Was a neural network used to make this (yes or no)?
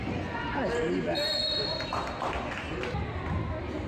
no